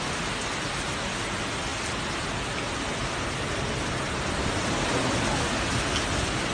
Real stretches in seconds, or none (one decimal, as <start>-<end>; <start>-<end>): 0.0-6.5